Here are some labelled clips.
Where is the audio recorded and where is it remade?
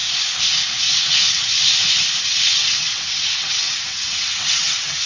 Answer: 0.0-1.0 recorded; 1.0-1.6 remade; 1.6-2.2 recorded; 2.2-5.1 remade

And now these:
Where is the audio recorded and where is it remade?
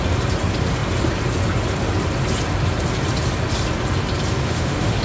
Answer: 0.0-4.4 recorded; 4.4-5.0 remade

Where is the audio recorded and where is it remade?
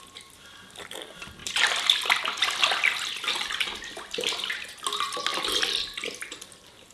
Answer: 0.0-5.3 recorded; 5.3-6.3 remade; 6.3-6.9 recorded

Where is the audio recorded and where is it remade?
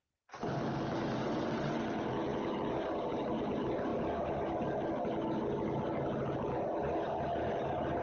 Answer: 0.0-1.2 recorded; 1.2-1.8 remade; 1.8-8.0 recorded